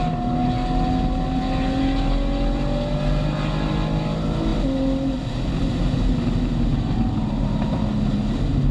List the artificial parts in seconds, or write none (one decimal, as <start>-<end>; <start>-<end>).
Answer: none